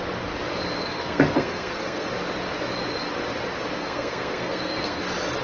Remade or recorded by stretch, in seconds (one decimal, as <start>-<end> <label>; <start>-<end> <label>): 0.0-0.8 recorded; 0.8-2.1 remade; 2.1-3.8 recorded; 3.8-5.0 remade; 5.0-5.4 recorded